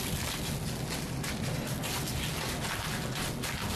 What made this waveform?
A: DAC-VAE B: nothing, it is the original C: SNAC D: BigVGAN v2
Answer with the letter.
B